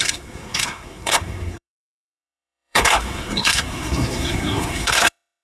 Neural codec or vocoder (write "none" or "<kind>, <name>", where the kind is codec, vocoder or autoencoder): codec, SNAC